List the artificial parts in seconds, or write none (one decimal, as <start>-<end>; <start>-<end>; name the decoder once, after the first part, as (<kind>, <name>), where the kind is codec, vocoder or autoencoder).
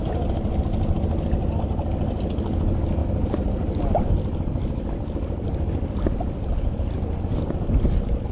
0.0-0.6 (vocoder, BigVGAN v2)